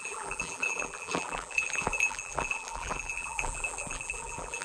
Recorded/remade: remade